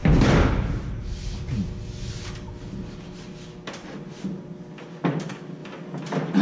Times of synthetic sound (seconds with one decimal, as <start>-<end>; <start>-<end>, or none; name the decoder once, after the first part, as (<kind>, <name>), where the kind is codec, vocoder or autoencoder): none